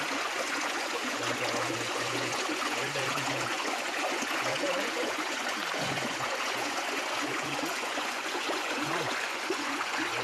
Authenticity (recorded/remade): remade